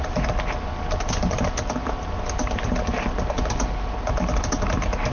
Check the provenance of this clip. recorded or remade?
recorded